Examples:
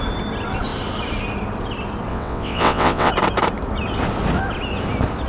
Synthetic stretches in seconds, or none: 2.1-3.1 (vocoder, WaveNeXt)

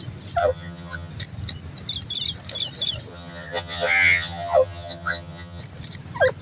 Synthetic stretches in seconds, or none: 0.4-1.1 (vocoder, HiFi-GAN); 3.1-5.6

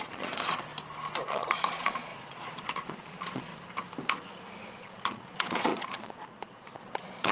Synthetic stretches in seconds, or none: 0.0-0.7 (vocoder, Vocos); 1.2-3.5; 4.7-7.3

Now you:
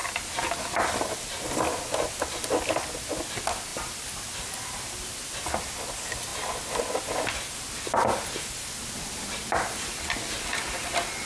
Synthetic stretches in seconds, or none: 0.0-1.1 (vocoder, BigVGAN v2); 3.7-5.8